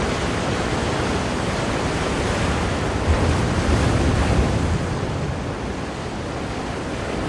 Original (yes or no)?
yes